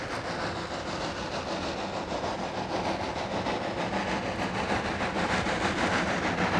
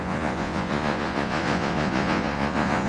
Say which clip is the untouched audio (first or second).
first